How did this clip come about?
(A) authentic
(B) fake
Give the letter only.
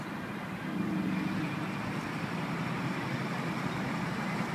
A